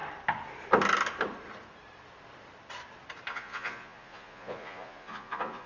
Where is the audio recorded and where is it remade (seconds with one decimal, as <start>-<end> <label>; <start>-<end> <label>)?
0.0-3.3 recorded; 3.3-5.7 remade